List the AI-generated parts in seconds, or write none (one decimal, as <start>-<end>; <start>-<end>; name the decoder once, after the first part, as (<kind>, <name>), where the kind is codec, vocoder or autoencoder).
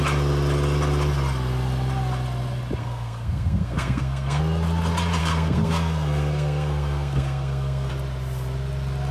2.8-4.4 (codec, SNAC); 5.2-7.9